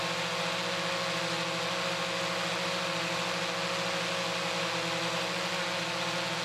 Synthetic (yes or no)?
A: no